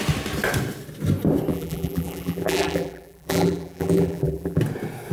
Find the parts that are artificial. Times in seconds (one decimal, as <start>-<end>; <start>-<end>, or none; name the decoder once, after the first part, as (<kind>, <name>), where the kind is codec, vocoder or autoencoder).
1.5-4.6 (vocoder, BigVGAN v2)